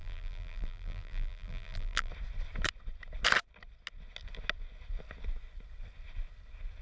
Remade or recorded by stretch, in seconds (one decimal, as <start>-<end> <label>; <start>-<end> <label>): 0.0-2.1 remade; 2.1-6.8 recorded